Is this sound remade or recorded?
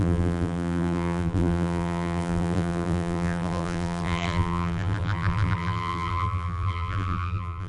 remade